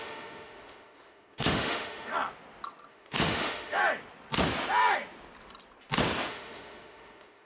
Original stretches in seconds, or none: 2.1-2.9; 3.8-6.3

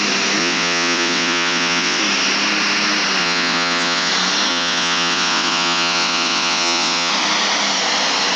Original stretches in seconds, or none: 0.0-0.4; 2.0-3.2; 4.1-4.5; 7.1-8.4

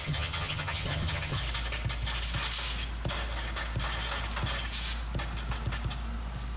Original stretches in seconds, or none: 1.4-6.6

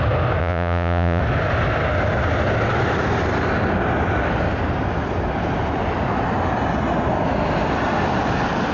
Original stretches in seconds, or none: 0.0-0.4; 1.2-8.7

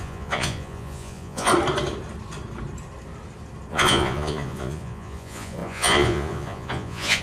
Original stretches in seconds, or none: 1.5-3.7

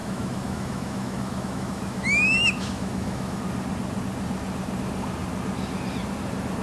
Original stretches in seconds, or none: 3.4-6.6

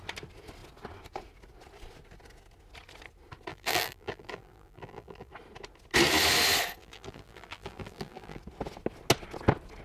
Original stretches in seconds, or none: 0.0-3.5; 5.3-6.8; 8.4-9.8